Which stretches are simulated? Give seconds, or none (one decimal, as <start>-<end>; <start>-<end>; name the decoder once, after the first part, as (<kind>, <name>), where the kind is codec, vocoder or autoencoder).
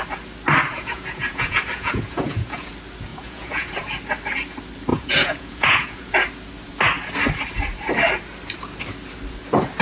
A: 0.7-2.7 (vocoder, Vocos); 3.1-3.7; 4.9-6.1